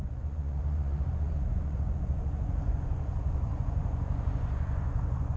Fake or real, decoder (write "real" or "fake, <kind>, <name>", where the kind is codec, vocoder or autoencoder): fake, vocoder, Vocos